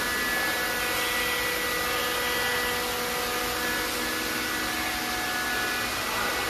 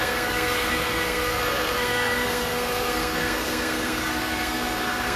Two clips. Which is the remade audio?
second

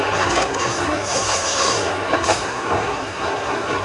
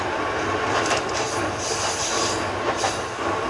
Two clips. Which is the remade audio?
first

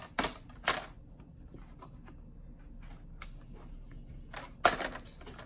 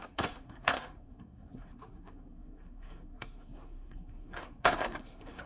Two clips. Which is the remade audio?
second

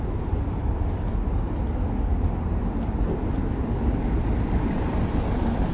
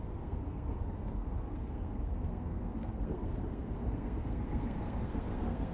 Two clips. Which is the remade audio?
second